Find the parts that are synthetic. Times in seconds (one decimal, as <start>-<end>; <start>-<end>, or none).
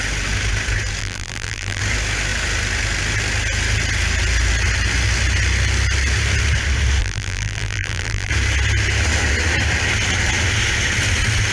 1.0-1.8; 7.0-8.3